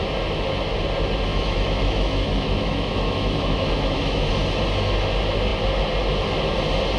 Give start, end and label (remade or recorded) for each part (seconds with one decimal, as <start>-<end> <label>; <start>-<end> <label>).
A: 0.0-1.3 recorded; 1.3-4.3 remade; 4.3-7.0 recorded